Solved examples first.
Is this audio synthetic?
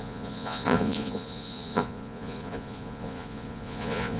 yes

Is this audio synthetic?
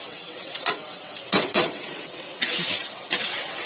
yes